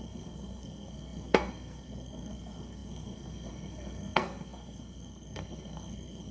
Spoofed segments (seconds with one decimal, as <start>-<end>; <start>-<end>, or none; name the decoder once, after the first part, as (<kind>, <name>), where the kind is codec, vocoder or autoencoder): 0.0-6.3 (codec, SNAC)